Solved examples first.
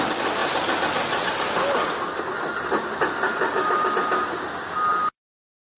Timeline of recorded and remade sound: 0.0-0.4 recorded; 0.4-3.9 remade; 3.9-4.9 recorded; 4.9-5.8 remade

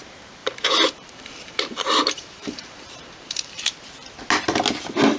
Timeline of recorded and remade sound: 0.0-0.4 recorded; 0.4-3.5 remade; 3.5-5.2 recorded

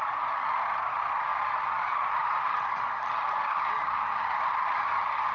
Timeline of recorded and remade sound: 0.0-5.3 recorded

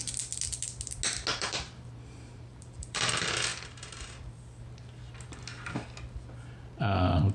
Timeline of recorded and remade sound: 0.0-1.3 recorded; 1.3-3.1 remade; 3.1-3.5 recorded; 3.5-4.6 remade; 4.6-7.3 recorded

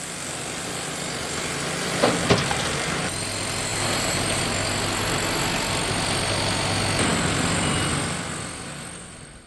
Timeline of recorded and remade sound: 0.0-3.7 recorded; 3.7-4.4 remade; 4.4-9.5 recorded